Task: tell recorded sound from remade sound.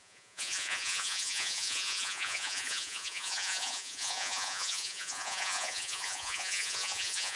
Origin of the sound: remade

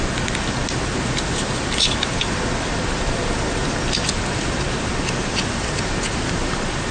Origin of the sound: recorded